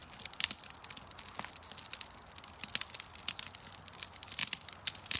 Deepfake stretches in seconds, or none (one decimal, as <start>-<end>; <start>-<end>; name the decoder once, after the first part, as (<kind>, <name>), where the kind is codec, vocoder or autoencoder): none